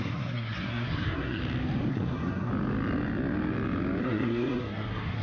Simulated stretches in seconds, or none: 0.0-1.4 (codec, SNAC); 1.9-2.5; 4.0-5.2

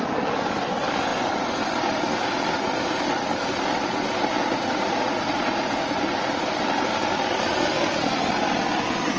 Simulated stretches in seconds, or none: 4.4-6.0 (vocoder, Vocos)